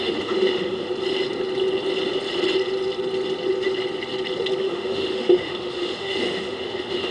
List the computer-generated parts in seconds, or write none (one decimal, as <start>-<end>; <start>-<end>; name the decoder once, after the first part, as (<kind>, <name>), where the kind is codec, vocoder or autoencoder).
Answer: 0.0-0.9 (autoencoder, DAC-VAE); 4.6-7.1